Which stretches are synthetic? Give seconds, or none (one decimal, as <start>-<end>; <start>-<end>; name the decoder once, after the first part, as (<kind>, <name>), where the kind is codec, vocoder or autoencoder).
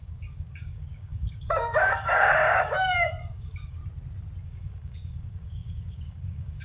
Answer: 0.0-3.8 (codec, DAC); 4.4-6.6